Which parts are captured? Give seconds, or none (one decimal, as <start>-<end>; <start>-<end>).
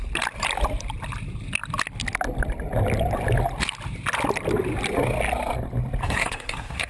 0.0-6.0